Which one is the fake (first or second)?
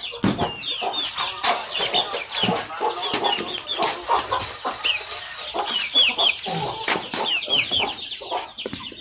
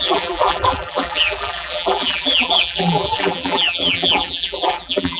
second